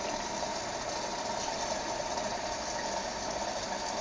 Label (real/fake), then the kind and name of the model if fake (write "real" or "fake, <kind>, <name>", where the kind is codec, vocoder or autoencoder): real